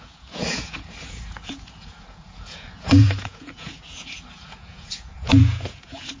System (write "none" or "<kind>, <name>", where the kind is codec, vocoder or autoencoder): vocoder, Vocos